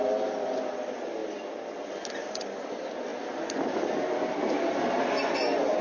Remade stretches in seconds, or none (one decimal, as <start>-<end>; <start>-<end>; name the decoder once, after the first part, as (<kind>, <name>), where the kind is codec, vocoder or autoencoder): none